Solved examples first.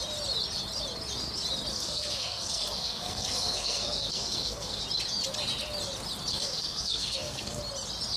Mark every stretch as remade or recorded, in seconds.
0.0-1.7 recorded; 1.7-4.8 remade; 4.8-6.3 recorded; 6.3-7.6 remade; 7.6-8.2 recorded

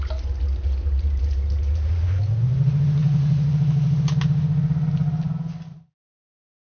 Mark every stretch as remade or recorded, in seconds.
0.0-6.6 recorded